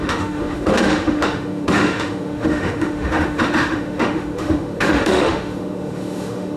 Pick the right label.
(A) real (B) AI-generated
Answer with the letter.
B